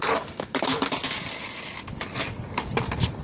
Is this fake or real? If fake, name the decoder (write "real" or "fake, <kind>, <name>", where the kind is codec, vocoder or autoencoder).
real